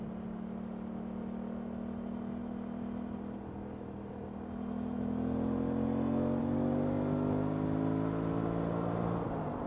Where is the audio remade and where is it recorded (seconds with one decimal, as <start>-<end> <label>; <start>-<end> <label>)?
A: 0.0-9.7 recorded